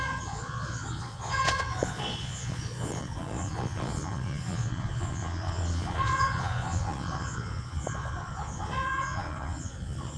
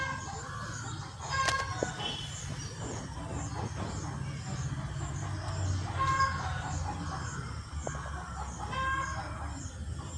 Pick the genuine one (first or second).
second